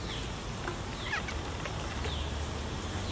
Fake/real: real